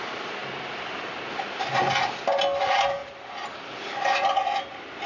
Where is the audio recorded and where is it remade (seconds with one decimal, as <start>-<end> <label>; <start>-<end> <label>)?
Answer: 0.0-3.0 recorded; 3.0-3.9 remade; 3.9-5.1 recorded